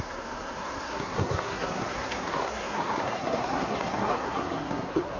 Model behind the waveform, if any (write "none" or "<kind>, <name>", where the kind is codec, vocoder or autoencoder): codec, SNAC